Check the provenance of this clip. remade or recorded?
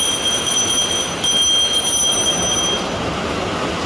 recorded